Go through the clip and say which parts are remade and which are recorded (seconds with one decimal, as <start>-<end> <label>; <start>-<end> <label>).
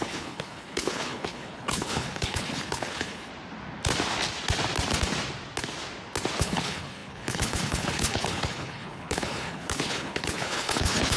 0.0-3.3 remade; 3.3-6.4 recorded; 6.4-11.2 remade